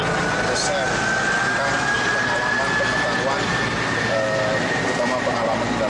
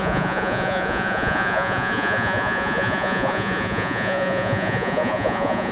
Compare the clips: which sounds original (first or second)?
first